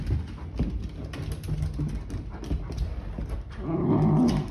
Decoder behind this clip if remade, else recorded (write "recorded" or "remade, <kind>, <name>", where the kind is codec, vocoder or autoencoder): recorded